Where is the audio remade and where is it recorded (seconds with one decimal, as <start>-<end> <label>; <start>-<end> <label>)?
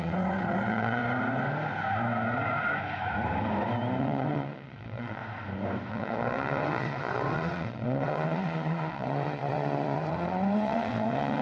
0.0-1.0 remade; 1.0-4.0 recorded; 4.0-5.2 remade; 5.2-5.9 recorded; 5.9-11.4 remade